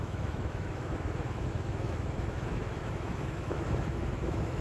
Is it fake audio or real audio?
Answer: fake